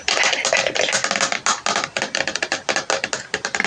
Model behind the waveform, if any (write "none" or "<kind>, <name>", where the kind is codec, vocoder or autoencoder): none